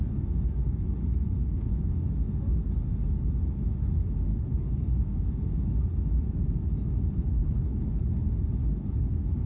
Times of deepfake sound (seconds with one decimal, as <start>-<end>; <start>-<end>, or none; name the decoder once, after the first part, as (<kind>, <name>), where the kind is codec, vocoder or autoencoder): 0.6-1.8 (codec, HILCodec); 4.3-5.0; 7.4-8.1; 8.6-9.5